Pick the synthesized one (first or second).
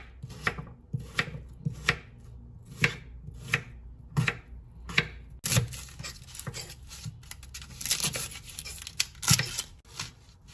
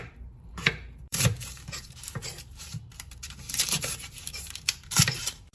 second